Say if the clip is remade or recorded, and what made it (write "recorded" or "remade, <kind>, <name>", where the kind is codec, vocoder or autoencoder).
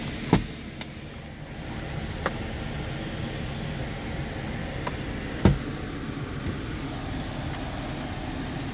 recorded